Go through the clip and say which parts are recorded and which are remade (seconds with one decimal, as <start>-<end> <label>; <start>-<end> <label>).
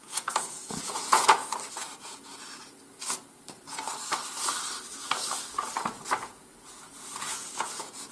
0.0-1.4 remade; 1.4-2.0 recorded; 2.0-2.8 remade; 2.8-6.2 recorded; 6.2-8.1 remade